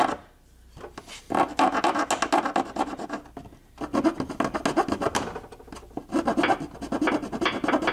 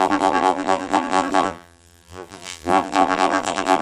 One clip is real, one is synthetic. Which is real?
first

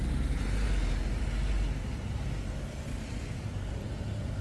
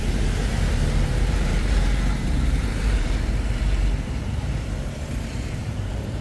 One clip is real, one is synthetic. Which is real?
first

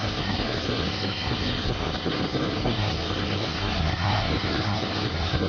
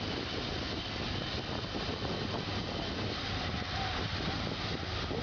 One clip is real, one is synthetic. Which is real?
second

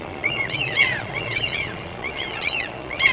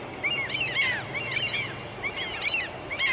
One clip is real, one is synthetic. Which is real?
second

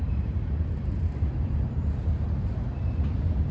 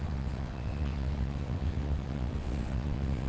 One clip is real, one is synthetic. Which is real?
first